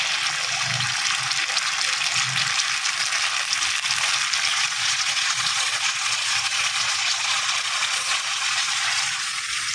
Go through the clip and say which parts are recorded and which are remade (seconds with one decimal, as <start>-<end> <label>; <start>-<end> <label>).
0.0-4.5 recorded; 4.5-9.7 remade